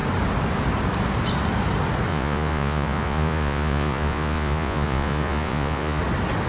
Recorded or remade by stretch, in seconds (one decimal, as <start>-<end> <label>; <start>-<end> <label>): 0.0-2.1 recorded; 2.1-6.0 remade; 6.0-6.5 recorded